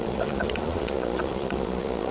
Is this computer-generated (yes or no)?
yes